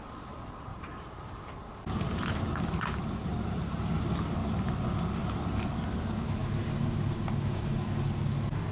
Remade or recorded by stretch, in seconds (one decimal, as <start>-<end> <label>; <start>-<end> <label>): 0.0-0.7 recorded; 0.7-2.6 remade; 2.6-8.7 recorded